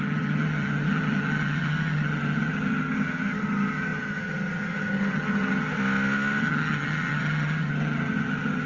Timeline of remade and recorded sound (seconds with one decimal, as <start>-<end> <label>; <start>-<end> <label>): 0.0-5.8 remade; 5.8-6.4 recorded; 6.4-8.7 remade